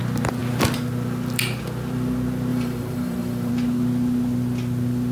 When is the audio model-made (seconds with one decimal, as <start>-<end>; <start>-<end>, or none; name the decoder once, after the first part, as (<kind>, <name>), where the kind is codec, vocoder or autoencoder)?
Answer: 2.5-3.5 (vocoder, BigVGAN v2)